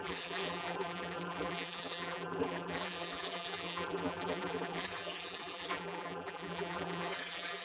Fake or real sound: fake